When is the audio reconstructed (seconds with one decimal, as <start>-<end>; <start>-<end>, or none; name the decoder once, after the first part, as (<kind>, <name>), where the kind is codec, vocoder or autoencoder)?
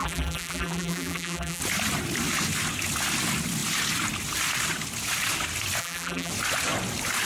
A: 0.0-1.6 (vocoder, BigVGAN v2); 5.8-6.3